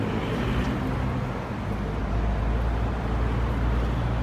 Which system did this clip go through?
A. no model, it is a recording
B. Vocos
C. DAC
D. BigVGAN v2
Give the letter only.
A